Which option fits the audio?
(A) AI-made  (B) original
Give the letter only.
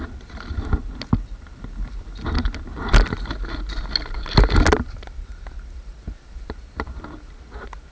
B